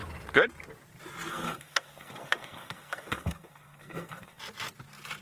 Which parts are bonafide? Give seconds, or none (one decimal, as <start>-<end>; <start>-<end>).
0.0-1.3; 4.4-5.2